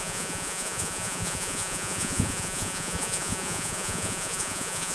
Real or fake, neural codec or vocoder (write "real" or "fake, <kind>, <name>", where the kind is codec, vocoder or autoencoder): fake, vocoder, Vocos